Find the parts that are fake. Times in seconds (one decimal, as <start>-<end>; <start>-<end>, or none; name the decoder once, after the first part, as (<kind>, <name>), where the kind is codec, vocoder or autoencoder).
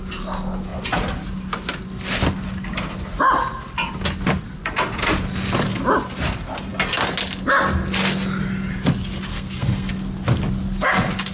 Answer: 9.3-9.9 (codec, SNAC)